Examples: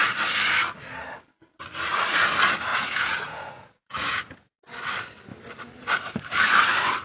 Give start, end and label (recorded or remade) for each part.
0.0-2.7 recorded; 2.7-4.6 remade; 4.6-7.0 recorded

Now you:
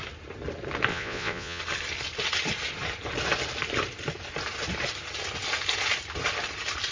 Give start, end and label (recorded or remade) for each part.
0.0-0.9 recorded; 0.9-1.6 remade; 1.6-6.9 recorded

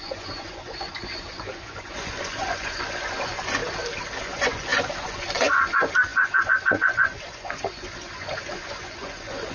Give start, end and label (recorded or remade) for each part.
0.0-3.6 remade; 3.6-4.2 recorded; 4.2-9.5 remade